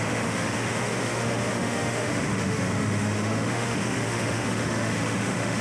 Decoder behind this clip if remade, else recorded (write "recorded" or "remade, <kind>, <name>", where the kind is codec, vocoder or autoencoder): remade, autoencoder, DAC-VAE